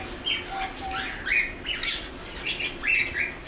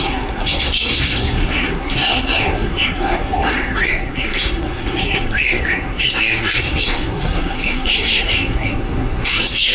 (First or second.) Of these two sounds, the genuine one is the first